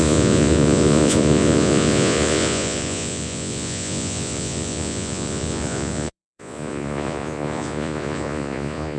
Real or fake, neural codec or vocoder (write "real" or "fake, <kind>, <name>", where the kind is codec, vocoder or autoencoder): fake, vocoder, Vocos